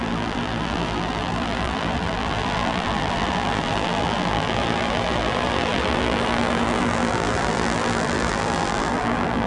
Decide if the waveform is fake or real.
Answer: fake